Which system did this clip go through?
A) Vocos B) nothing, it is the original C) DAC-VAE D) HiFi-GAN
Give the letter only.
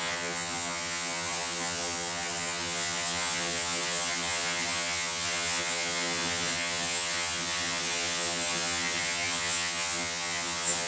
D